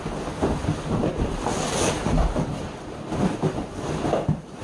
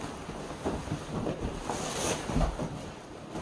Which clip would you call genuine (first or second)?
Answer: first